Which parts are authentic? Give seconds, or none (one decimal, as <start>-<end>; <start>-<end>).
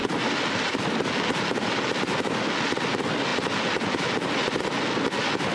0.0-5.5